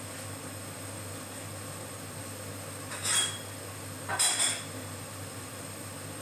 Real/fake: real